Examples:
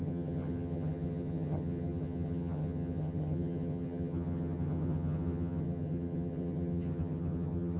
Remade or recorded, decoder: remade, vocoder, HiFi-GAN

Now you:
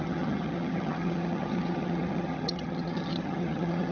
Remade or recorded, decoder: remade, vocoder, HiFi-GAN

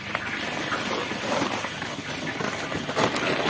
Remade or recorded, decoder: recorded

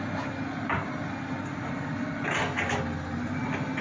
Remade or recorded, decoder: recorded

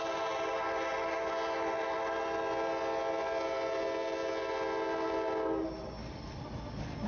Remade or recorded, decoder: recorded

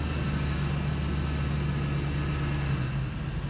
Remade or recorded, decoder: recorded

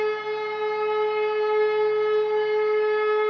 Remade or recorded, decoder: recorded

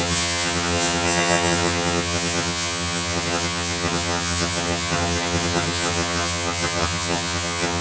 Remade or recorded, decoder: remade, vocoder, HiFi-GAN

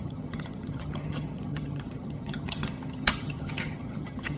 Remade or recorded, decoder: remade, vocoder, HiFi-GAN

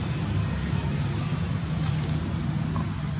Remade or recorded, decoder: recorded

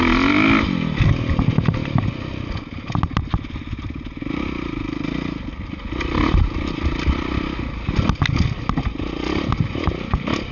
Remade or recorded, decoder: recorded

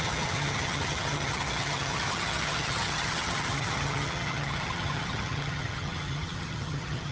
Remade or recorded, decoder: remade, vocoder, HiFi-GAN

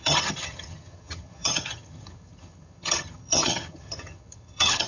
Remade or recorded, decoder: remade, vocoder, HiFi-GAN